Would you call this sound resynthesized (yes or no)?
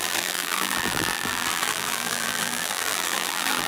yes